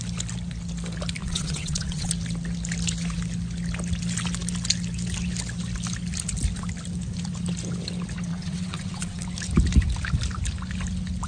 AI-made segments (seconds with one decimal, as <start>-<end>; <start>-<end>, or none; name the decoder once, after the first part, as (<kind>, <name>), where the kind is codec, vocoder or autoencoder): 1.2-2.1 (vocoder, WaveNeXt); 8.3-9.2